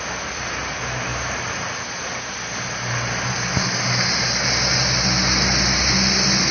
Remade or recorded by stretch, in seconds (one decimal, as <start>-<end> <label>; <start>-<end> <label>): 0.0-6.5 recorded